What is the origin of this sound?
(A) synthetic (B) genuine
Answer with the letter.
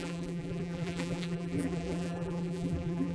A